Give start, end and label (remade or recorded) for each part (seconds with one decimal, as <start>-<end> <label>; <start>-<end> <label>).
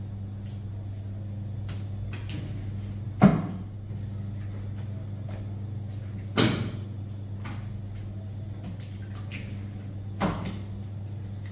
0.0-11.5 recorded